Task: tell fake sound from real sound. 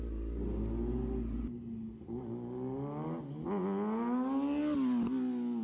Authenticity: real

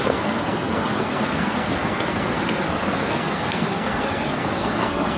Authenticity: fake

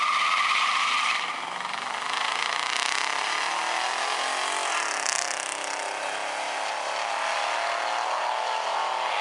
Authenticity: real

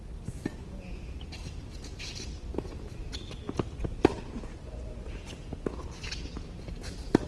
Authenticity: real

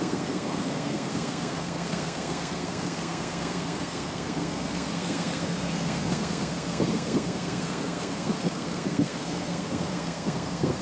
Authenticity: fake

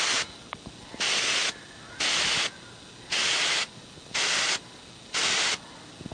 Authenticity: real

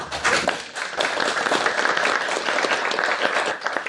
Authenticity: real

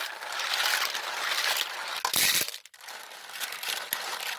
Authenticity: real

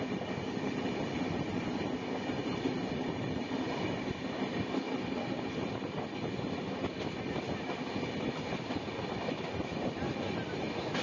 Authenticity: real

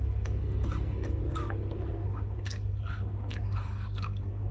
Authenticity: fake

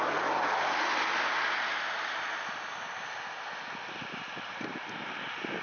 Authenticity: real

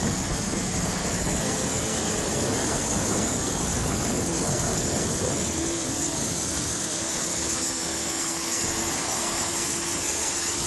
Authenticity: fake